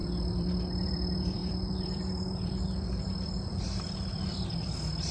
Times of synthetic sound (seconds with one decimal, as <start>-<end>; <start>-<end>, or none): 0.0-5.1